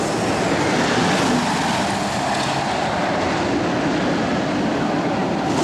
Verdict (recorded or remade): recorded